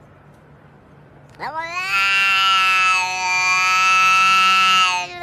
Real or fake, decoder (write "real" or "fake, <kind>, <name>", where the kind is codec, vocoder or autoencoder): real